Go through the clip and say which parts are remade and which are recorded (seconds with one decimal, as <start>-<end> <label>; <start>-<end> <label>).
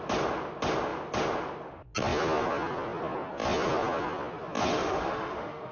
0.0-4.7 recorded; 4.7-5.7 remade